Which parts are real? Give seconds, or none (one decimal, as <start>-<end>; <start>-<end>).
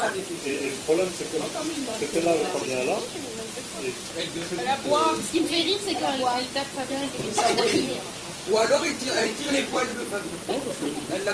2.4-6.9; 9.9-11.3